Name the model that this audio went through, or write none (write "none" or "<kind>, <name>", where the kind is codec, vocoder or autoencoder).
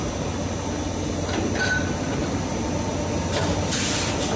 none